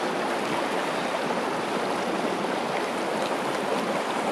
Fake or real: real